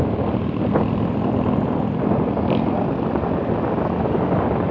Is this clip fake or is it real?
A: real